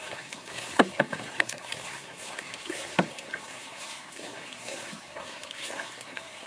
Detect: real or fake fake